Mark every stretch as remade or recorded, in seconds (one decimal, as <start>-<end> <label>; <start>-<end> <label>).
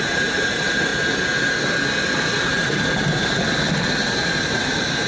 0.0-0.9 remade; 0.9-2.3 recorded; 2.3-3.3 remade; 3.3-4.0 recorded; 4.0-5.1 remade